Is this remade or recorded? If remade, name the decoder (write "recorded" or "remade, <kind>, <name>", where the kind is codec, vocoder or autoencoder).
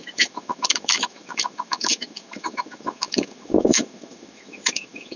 remade, autoencoder, DAC-VAE